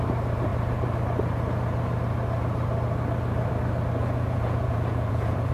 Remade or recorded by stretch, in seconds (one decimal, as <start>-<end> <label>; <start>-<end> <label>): 0.0-4.0 recorded; 4.0-5.5 remade